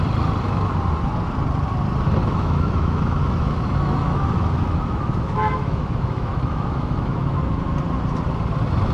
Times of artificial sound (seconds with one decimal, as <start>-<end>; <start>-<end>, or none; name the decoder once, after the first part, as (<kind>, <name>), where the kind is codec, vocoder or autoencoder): 2.2-7.4 (autoencoder, DAC-VAE)